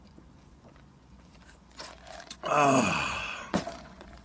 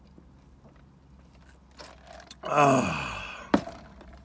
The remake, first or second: first